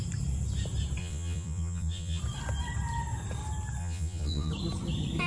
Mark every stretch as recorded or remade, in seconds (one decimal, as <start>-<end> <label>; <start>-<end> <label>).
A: 0.0-1.0 recorded; 1.0-2.2 remade; 2.2-3.8 recorded; 3.8-4.5 remade; 4.5-5.3 recorded